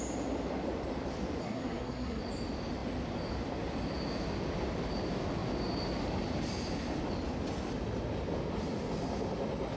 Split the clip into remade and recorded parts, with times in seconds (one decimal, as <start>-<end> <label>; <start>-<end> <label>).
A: 0.0-1.4 recorded; 1.4-2.2 remade; 2.2-9.8 recorded